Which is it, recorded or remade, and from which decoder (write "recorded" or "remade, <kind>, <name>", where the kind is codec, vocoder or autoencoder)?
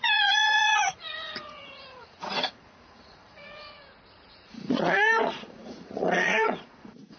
remade, vocoder, Vocos